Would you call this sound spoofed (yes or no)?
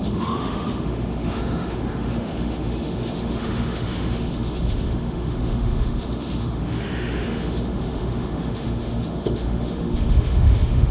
yes